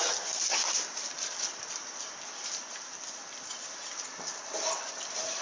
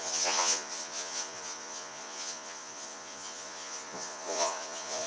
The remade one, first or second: second